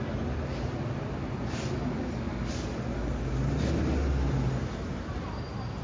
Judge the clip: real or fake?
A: real